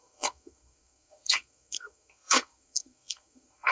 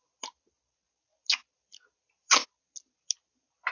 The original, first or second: second